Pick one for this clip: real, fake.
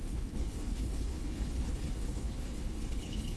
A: fake